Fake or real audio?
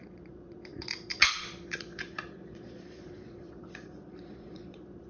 fake